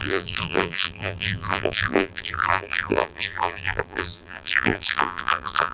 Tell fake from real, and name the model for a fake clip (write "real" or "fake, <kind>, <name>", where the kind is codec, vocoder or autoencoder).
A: fake, vocoder, BigVGAN v2